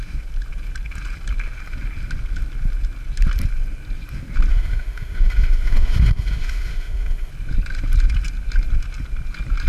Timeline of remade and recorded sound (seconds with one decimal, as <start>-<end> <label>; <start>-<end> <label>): 0.0-4.5 recorded; 4.5-7.3 remade; 7.3-9.7 recorded